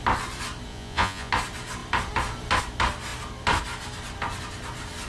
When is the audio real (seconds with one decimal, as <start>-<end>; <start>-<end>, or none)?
0.0-0.7; 1.3-5.1